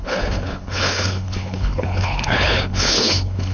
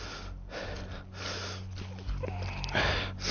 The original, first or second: second